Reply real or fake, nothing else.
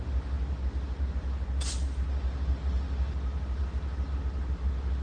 real